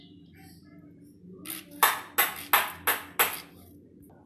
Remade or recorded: recorded